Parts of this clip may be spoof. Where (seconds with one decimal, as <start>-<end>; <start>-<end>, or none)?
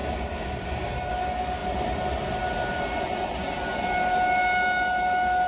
0.0-1.1